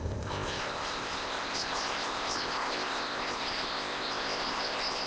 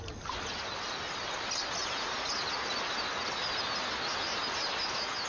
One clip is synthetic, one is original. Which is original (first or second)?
second